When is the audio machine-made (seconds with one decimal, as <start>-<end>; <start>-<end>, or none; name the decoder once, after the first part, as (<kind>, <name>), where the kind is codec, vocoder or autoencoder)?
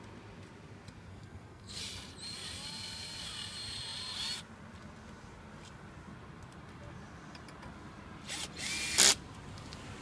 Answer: 1.1-1.8 (codec, SNAC)